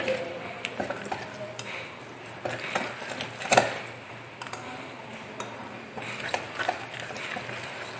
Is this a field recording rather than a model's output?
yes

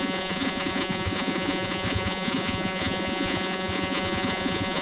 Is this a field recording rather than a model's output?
no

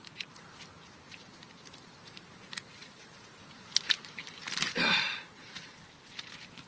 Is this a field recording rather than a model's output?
no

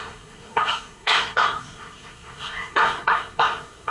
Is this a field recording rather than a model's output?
no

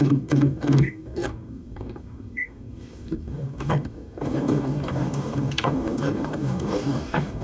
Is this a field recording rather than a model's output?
no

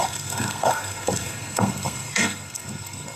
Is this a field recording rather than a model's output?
no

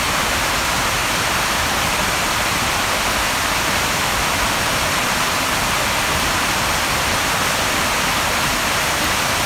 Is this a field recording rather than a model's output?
yes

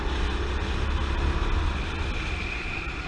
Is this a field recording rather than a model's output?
yes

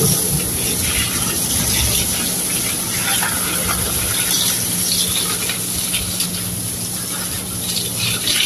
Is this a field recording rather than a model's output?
yes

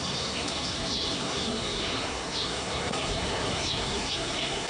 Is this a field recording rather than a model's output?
no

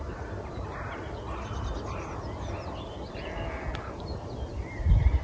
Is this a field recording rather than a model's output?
yes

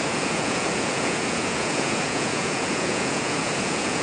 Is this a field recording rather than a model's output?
no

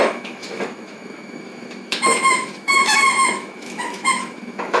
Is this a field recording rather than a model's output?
no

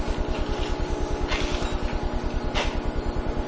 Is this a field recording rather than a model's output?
yes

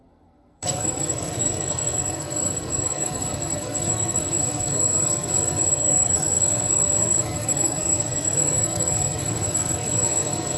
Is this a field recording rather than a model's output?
no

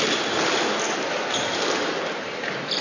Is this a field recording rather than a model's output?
yes